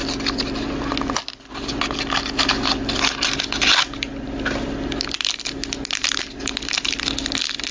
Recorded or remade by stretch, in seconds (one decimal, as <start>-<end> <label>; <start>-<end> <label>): 0.0-7.7 recorded